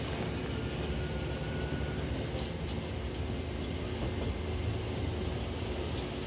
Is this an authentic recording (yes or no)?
yes